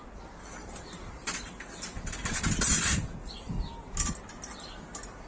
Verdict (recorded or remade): recorded